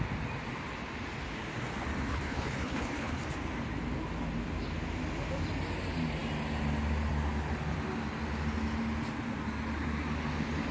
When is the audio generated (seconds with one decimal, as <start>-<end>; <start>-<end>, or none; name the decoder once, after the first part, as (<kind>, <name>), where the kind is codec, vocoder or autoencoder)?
2.1-3.2 (codec, HILCodec)

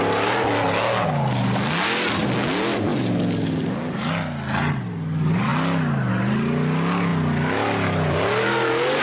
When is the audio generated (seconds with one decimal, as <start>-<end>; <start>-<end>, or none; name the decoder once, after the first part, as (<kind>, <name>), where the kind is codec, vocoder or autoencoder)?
none